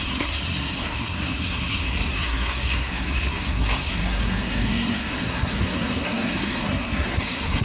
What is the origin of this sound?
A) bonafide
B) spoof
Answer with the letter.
B